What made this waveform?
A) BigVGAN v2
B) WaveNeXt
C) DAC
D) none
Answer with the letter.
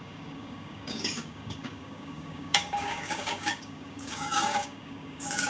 C